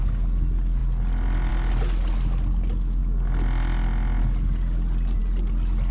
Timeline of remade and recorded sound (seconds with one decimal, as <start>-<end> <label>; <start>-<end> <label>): 0.0-5.9 recorded